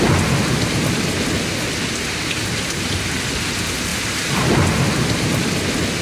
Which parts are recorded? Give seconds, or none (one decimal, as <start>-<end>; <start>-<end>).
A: 0.0-3.9; 4.5-6.0